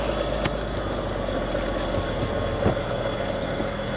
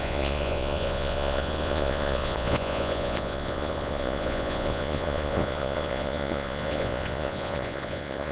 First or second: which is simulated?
second